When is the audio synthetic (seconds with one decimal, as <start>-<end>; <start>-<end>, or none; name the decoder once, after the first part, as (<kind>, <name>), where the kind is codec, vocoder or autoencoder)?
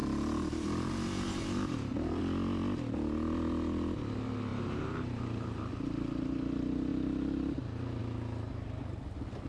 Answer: 0.0-2.2 (vocoder, BigVGAN v2); 4.5-5.7